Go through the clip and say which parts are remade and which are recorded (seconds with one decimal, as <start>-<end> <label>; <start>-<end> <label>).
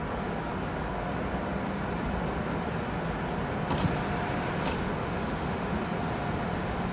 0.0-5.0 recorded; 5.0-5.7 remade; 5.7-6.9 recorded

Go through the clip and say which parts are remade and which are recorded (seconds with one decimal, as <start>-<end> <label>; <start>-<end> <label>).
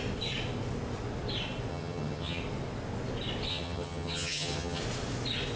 0.0-1.7 recorded; 1.7-2.4 remade; 2.4-3.5 recorded; 3.5-4.8 remade; 4.8-5.6 recorded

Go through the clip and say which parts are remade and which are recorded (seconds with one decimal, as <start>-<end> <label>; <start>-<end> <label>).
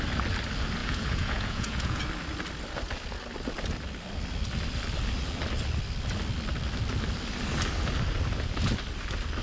0.0-0.8 recorded; 0.8-2.0 remade; 2.0-9.4 recorded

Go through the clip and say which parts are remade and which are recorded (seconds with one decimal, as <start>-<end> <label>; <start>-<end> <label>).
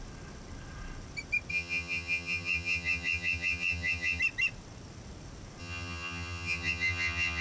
0.0-1.5 recorded; 1.5-4.2 remade; 4.2-5.6 recorded; 5.6-7.4 remade